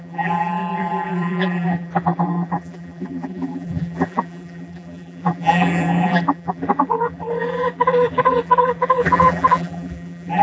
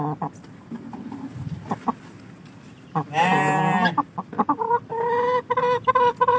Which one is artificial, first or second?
first